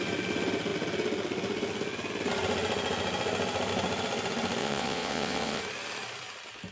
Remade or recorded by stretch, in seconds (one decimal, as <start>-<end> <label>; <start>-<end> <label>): 0.0-4.6 recorded; 4.6-5.6 remade; 5.6-6.7 recorded